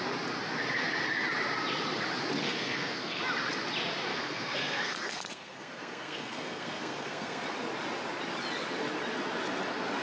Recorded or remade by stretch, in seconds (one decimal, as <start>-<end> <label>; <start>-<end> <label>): 0.0-2.4 recorded; 2.4-3.2 remade; 3.2-4.1 recorded; 4.1-7.4 remade; 7.4-10.0 recorded